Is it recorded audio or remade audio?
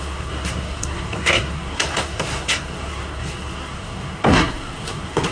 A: remade